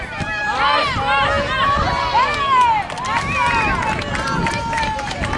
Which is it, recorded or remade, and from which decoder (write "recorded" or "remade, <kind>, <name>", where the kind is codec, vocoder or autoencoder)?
recorded